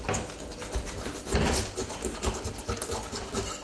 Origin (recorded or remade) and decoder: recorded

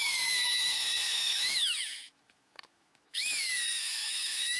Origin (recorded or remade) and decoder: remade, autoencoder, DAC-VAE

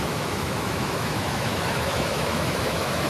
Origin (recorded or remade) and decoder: remade, autoencoder, DAC-VAE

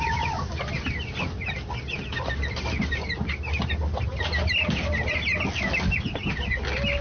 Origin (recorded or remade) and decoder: recorded